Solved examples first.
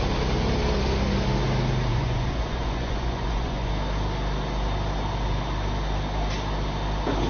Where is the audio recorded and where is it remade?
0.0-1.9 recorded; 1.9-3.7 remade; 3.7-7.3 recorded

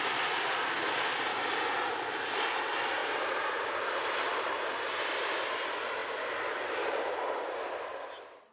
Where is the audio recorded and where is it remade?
0.0-8.5 recorded

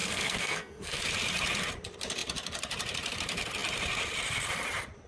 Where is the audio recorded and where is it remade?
0.0-1.0 remade; 1.0-5.1 recorded

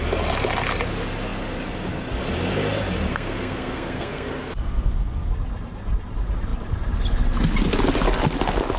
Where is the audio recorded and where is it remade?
0.0-3.1 recorded; 3.1-5.3 remade; 5.3-8.8 recorded

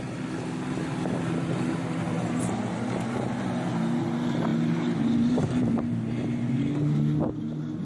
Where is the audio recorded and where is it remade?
0.0-7.8 recorded

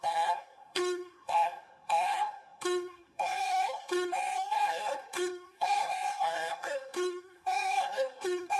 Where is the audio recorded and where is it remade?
0.0-8.6 remade